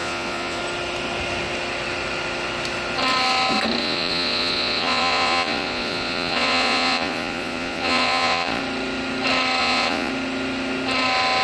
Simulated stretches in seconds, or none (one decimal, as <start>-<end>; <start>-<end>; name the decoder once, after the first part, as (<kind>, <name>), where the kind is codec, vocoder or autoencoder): 0.0-0.6 (vocoder, Vocos); 3.8-8.6; 9.6-10.1